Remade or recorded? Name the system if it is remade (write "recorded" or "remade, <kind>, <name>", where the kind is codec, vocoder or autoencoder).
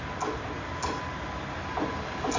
recorded